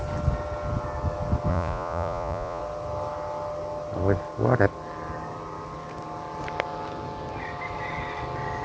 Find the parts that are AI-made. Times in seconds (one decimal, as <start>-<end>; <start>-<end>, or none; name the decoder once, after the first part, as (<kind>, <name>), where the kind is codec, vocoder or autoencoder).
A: 1.5-2.6 (vocoder, Vocos)